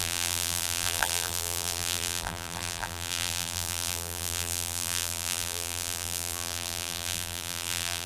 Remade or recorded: remade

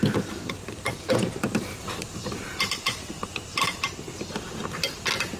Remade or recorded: recorded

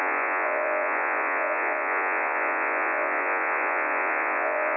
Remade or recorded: remade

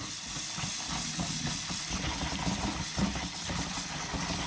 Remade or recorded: recorded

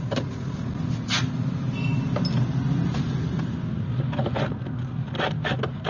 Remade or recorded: recorded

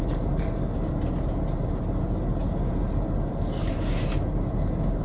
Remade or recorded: recorded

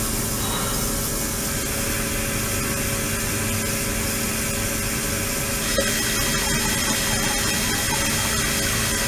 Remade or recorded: recorded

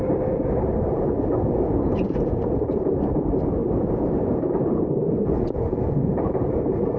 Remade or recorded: remade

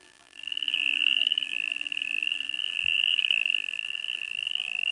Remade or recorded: remade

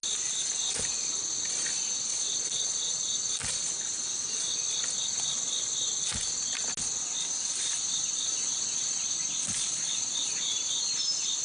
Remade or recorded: recorded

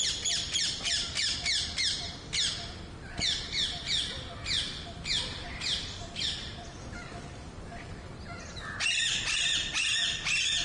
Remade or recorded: remade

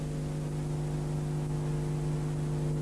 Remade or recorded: recorded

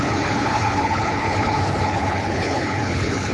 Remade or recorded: remade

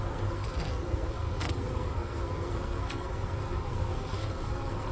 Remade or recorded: remade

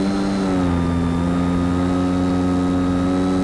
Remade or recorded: recorded